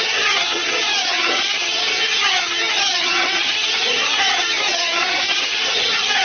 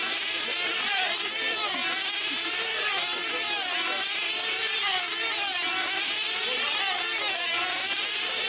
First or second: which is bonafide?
second